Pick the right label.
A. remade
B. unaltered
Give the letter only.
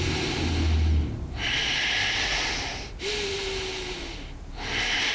B